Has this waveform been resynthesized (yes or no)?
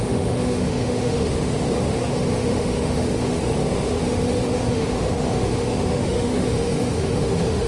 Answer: yes